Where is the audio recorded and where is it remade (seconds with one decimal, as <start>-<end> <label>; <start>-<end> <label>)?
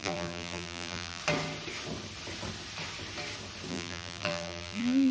0.0-1.2 remade; 1.2-3.7 recorded; 3.7-5.1 remade